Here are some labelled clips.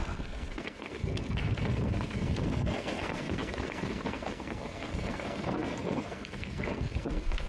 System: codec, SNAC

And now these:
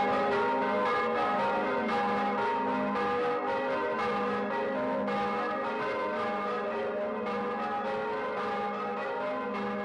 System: none